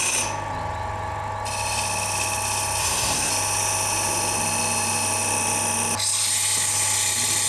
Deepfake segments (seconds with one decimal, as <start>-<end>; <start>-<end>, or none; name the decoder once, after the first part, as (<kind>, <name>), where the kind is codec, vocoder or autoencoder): 2.8-3.3 (codec, SNAC)